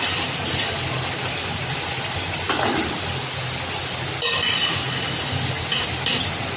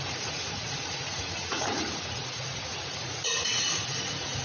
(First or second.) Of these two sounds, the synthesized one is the second